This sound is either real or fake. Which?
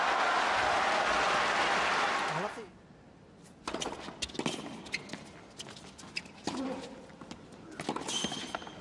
real